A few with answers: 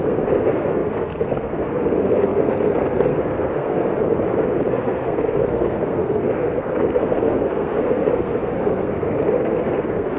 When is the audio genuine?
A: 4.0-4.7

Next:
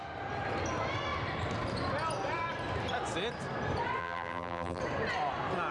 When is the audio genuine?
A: 0.0-4.0; 4.8-5.7